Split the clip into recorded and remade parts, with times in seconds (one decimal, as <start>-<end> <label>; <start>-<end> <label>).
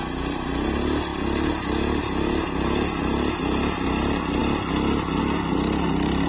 0.0-6.3 recorded